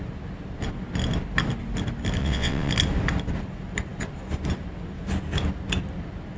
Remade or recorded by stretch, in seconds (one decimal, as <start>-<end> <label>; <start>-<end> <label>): 0.0-2.2 recorded; 2.2-2.7 remade; 2.7-6.4 recorded